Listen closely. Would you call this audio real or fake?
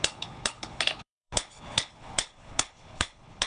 fake